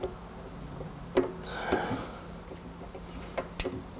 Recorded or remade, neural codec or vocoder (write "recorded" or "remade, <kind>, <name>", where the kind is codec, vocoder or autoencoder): recorded